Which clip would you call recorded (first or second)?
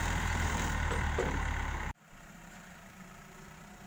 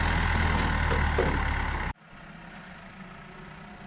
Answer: second